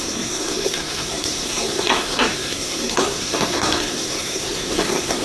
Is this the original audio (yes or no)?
no